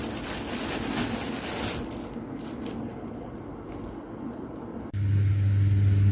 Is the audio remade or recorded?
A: recorded